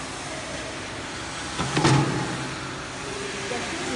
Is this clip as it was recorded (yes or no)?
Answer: yes